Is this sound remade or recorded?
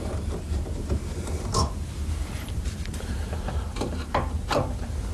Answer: remade